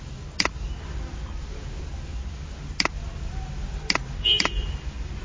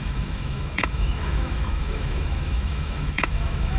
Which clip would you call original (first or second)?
first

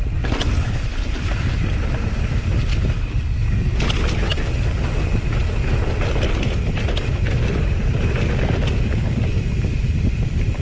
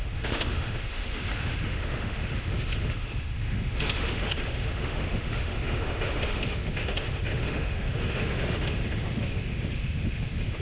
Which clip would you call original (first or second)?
first